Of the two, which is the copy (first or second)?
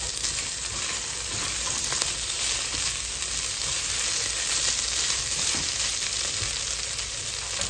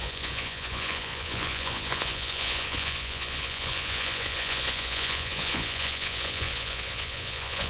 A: second